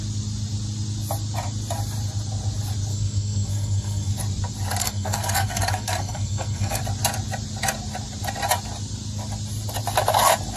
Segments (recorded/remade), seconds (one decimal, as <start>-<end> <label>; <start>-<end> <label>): 0.0-2.9 recorded; 2.9-4.1 remade; 4.1-4.8 recorded; 4.8-6.8 remade; 6.8-10.6 recorded